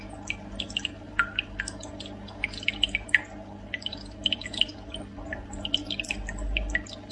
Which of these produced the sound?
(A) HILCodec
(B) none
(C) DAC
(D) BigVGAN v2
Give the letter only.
B